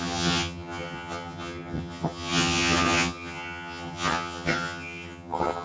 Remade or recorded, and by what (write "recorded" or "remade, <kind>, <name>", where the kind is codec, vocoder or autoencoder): remade, vocoder, HiFi-GAN